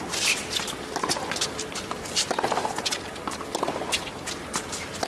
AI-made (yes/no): no